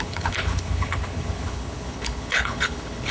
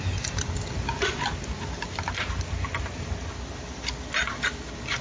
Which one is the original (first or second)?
second